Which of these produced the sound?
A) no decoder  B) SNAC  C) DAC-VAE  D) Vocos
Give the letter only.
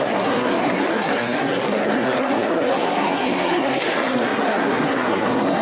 B